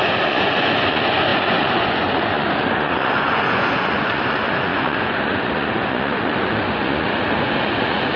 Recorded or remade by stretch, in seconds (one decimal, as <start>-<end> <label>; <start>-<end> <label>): 0.0-8.2 remade